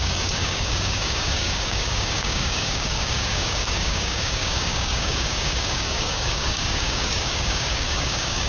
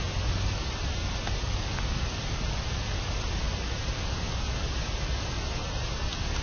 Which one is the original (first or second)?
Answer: second